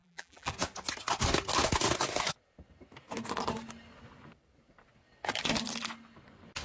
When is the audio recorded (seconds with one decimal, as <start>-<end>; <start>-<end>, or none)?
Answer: 0.5-6.6